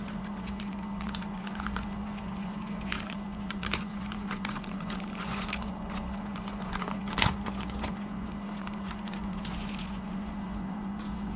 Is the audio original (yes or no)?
no